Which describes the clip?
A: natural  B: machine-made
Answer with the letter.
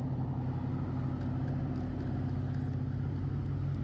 A